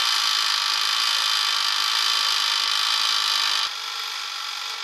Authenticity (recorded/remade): recorded